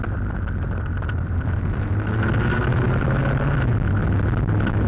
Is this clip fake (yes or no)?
no